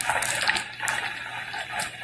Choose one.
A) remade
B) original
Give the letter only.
B